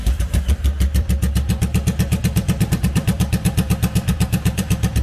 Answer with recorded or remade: remade